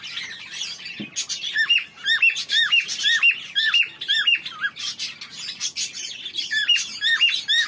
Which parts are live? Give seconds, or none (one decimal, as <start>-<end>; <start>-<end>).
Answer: 0.0-7.7